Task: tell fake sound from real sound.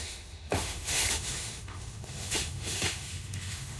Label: fake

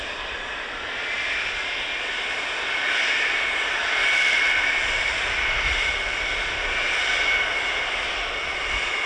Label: fake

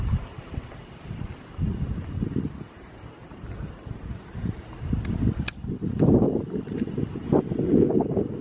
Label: real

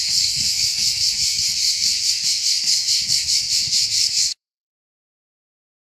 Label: fake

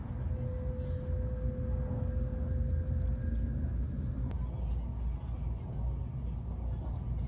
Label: real